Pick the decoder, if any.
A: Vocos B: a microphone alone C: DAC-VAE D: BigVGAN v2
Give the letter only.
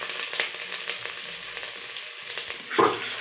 B